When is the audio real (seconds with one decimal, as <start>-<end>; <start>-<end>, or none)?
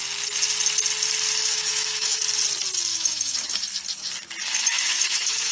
0.0-1.4; 2.2-2.9; 3.6-4.7